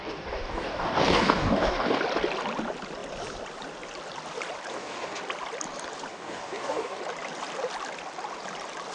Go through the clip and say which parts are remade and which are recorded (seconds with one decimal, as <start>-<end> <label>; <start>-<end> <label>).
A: 0.0-2.0 remade; 2.0-4.7 recorded; 4.7-5.2 remade; 5.2-6.1 recorded; 6.1-7.0 remade; 7.0-8.9 recorded